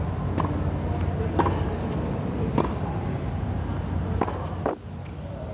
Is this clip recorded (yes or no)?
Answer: yes